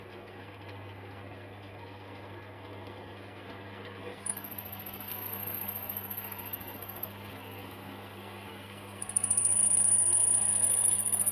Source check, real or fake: fake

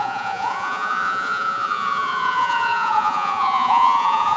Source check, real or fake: fake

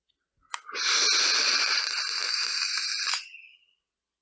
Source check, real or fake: real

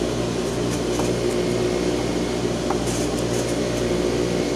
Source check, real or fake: real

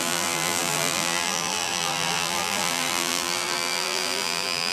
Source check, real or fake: fake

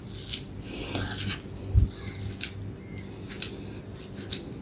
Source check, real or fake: real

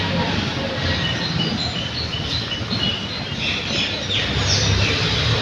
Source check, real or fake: real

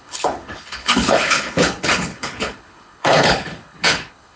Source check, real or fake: fake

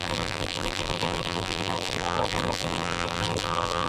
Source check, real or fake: fake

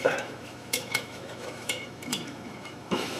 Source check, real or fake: fake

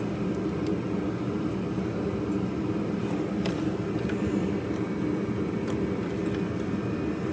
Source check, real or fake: real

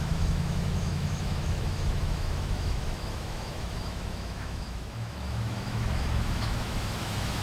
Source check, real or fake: fake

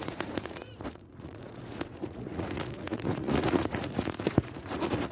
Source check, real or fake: fake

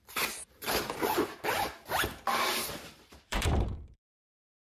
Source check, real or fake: fake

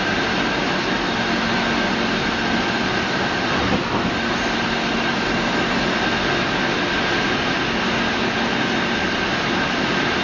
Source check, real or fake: real